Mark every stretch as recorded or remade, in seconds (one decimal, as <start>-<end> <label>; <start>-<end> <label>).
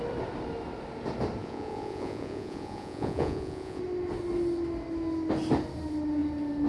0.0-1.4 recorded; 1.4-3.8 remade; 3.8-6.7 recorded